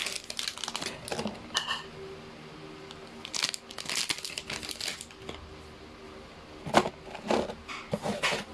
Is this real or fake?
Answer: real